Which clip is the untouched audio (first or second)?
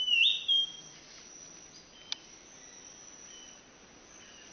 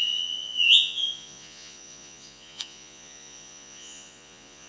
first